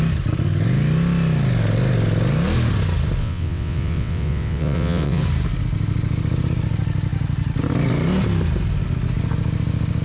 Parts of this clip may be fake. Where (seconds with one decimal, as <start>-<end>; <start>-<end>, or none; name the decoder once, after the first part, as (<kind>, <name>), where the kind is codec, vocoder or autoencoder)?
3.2-5.2 (vocoder, WaveNeXt)